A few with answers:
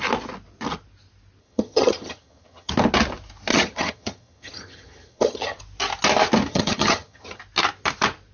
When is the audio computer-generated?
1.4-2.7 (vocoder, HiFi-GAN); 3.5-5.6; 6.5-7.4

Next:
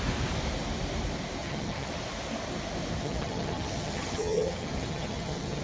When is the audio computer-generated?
1.4-1.9 (vocoder, HiFi-GAN); 3.0-5.6

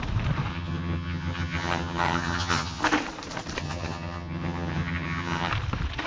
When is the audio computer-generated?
0.5-2.8 (vocoder, HiFi-GAN); 3.6-5.5

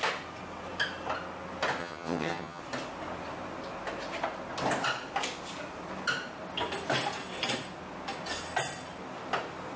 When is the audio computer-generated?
1.8-2.6 (vocoder, HiFi-GAN)